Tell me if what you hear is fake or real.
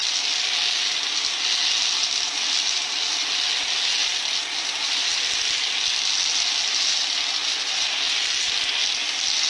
real